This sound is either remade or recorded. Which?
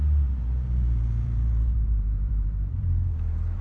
remade